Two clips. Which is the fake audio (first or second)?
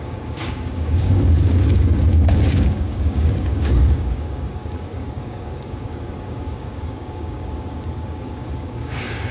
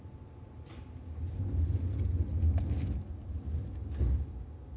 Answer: first